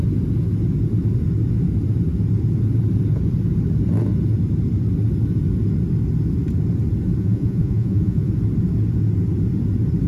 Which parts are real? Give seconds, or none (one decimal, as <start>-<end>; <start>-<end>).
0.0-7.2; 8.3-10.1